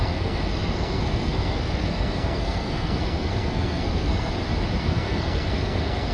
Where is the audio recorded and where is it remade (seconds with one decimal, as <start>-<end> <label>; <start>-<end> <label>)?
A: 0.0-4.3 remade; 4.3-4.8 recorded; 4.8-6.1 remade